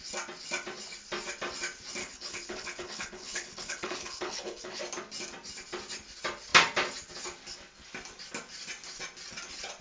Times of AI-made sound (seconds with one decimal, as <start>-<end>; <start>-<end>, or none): 2.0-4.8